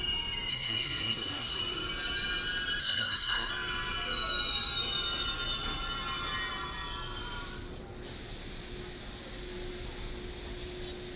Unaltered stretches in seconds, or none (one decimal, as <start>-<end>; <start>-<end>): 0.0-0.5; 1.6-2.8; 3.5-11.2